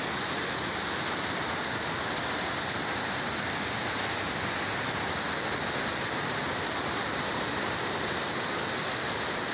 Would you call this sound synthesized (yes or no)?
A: no